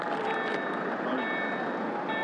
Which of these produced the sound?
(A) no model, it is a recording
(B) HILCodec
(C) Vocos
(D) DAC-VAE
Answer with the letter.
A